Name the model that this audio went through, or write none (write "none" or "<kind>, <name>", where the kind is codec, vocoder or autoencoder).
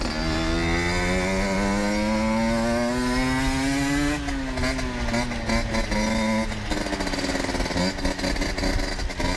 none